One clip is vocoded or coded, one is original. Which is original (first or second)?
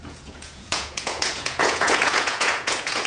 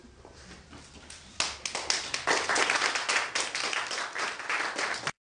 second